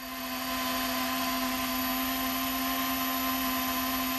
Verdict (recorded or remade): recorded